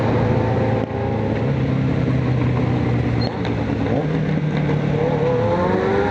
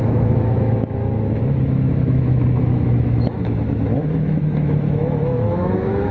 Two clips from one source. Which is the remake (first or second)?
second